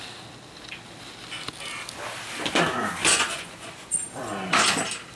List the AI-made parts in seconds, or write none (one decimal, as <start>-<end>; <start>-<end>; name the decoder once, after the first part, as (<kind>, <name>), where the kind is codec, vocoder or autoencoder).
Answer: 3.0-4.0 (vocoder, Vocos)